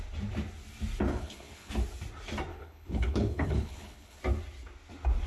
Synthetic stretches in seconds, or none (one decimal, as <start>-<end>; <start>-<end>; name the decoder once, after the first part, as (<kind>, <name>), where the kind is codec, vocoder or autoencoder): 1.1-1.7 (codec, HILCodec); 2.5-4.2